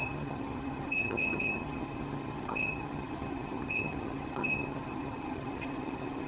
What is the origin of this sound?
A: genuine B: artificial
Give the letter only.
B